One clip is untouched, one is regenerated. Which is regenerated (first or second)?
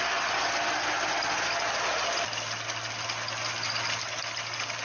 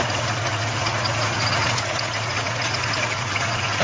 second